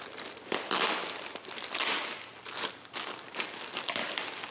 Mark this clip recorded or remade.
recorded